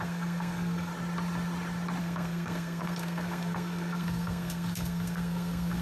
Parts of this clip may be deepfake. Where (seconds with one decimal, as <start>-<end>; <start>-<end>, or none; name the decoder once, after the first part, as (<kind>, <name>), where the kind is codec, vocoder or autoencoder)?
0.0-0.9 (codec, SNAC); 2.0-5.8